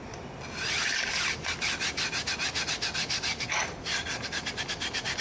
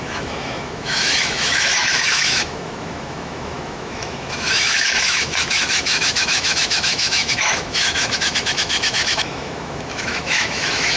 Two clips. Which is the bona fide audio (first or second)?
first